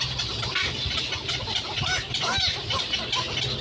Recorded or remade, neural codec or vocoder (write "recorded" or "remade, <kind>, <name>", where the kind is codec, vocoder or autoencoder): recorded